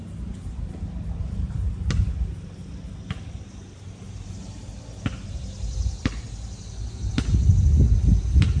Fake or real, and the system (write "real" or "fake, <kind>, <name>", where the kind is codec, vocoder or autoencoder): real